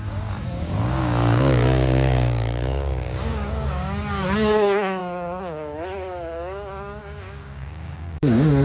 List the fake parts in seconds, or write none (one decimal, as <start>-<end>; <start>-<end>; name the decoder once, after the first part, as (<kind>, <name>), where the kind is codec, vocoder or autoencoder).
0.0-8.6 (codec, DAC)